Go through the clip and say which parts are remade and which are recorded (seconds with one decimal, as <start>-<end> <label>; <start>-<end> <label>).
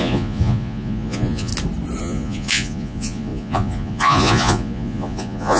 0.0-1.5 remade; 1.5-2.0 recorded; 2.0-5.6 remade